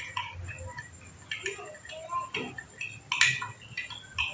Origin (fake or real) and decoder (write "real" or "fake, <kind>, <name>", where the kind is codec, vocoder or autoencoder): real